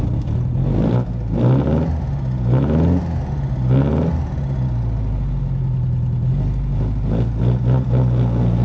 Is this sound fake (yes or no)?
no